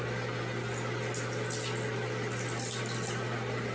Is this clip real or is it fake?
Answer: real